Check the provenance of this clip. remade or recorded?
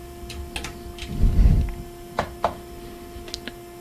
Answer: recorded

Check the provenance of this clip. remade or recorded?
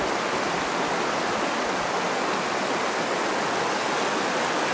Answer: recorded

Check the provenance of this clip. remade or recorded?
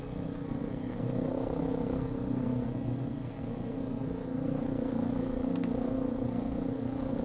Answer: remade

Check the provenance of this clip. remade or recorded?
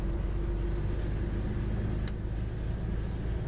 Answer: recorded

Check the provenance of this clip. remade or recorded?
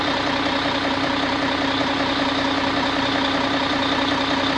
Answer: recorded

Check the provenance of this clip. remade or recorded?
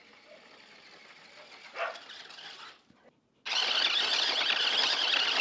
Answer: recorded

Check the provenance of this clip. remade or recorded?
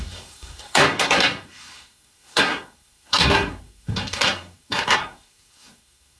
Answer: remade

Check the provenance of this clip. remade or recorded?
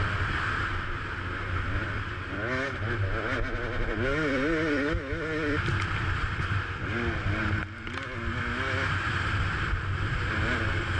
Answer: recorded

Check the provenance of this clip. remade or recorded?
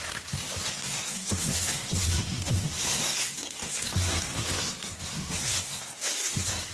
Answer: remade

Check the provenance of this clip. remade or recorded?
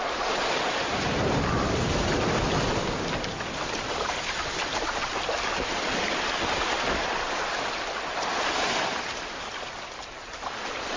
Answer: recorded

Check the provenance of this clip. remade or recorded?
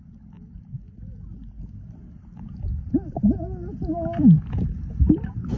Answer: recorded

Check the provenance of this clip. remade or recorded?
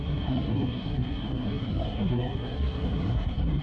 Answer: remade